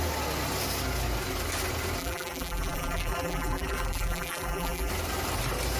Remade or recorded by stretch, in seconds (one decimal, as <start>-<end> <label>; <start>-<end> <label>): 0.0-2.0 recorded; 2.0-4.9 remade; 4.9-5.8 recorded